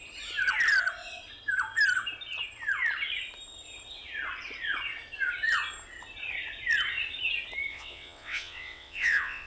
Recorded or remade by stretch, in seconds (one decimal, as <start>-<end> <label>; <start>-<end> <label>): 0.0-7.7 recorded; 7.7-9.5 remade